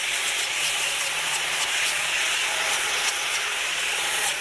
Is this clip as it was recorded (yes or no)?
no